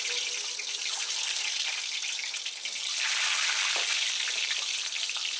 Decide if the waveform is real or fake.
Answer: real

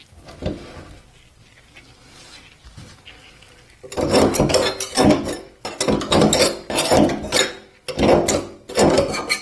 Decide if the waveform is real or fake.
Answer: real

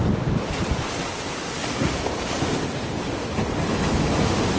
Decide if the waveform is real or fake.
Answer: real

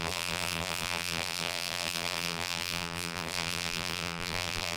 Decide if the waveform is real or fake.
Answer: fake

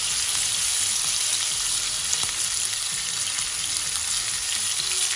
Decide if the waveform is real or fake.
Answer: real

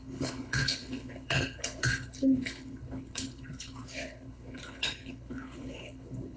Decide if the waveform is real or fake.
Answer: fake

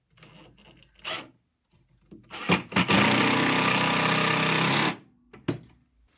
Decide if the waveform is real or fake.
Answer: real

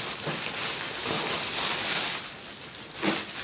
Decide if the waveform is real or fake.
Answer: real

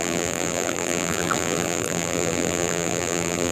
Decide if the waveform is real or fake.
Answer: fake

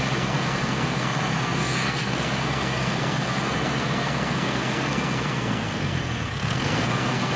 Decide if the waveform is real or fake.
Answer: fake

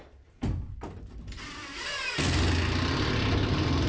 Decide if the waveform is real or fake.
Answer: real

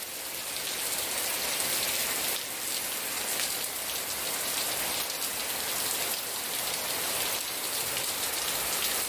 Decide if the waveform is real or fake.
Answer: real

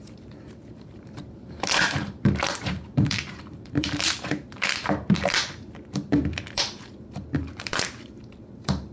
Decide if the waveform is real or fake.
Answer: fake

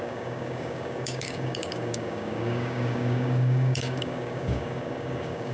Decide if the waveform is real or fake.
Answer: fake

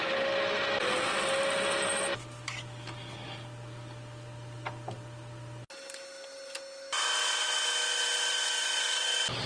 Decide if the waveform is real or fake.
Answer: real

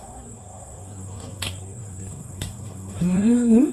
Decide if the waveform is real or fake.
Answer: fake